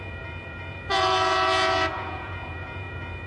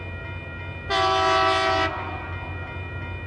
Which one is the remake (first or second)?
first